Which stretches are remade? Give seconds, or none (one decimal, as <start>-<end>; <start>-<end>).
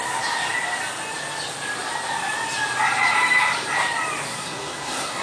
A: 4.3-5.2